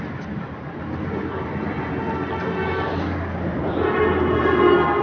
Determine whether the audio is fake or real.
real